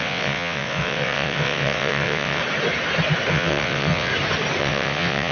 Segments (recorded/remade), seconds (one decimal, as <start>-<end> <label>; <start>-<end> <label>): 0.0-2.4 remade; 2.4-3.3 recorded; 3.3-4.1 remade; 4.1-4.6 recorded; 4.6-5.3 remade